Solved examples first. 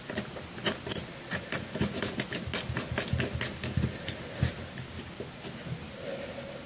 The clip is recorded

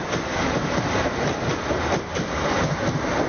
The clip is recorded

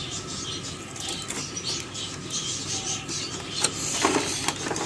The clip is recorded